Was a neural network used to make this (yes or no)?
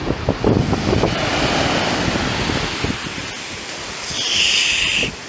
no